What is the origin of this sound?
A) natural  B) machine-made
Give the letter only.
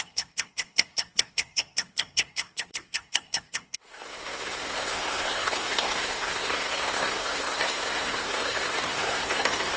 B